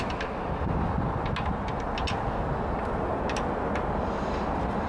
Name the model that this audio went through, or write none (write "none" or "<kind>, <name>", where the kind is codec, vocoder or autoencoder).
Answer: none